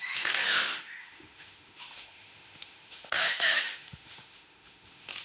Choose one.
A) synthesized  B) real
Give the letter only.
A